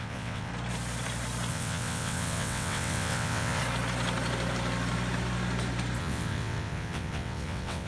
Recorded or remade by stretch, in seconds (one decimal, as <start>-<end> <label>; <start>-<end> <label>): 0.0-0.5 remade; 0.5-1.5 recorded; 1.5-3.6 remade; 3.6-6.0 recorded; 6.0-7.9 remade